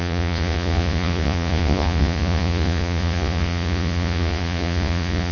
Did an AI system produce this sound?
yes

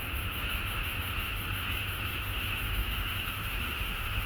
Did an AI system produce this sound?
yes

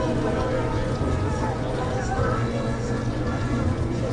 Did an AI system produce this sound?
yes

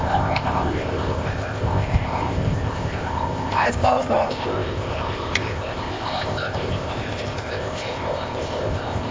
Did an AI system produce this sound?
yes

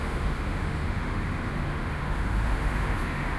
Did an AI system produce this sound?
yes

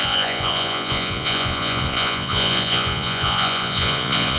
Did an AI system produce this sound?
yes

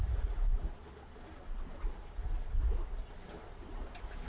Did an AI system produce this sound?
no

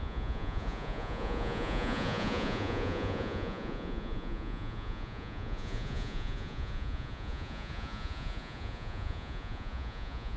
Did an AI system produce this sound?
yes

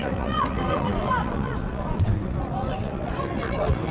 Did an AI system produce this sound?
yes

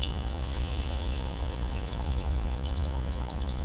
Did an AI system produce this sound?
yes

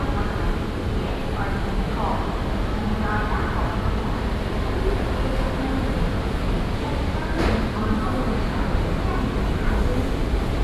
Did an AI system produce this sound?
no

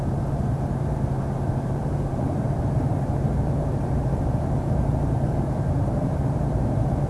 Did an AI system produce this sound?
yes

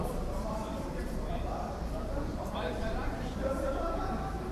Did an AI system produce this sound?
yes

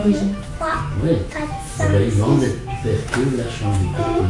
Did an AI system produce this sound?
yes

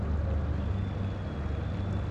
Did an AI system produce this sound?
no